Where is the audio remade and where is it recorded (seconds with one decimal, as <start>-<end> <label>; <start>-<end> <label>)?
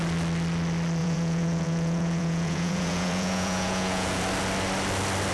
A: 0.0-1.0 recorded; 1.0-4.2 remade; 4.2-5.3 recorded